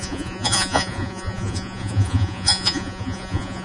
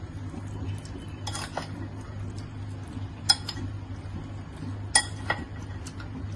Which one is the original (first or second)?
second